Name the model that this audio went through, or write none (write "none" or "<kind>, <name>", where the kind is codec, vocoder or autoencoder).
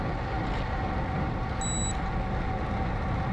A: none